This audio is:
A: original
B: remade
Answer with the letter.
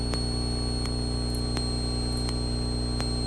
A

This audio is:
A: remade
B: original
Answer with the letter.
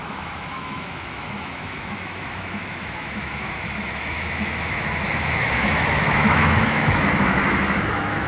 A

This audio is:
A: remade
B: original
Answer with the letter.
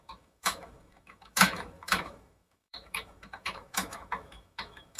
A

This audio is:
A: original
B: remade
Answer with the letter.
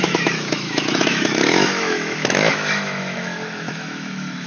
B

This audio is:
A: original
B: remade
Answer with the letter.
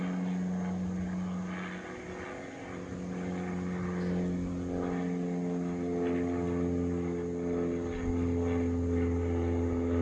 A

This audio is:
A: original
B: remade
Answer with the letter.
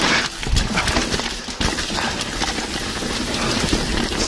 A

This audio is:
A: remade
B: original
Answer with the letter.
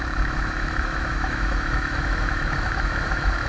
A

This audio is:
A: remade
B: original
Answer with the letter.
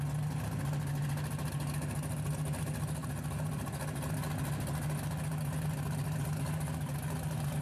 B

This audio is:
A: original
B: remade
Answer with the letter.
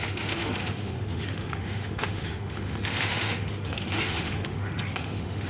B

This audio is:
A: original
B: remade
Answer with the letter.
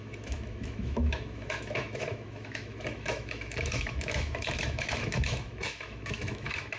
B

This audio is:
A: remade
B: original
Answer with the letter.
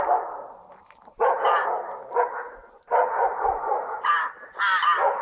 B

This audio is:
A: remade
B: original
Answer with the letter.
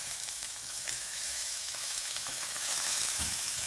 A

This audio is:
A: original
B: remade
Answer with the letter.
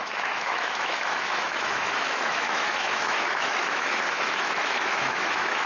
B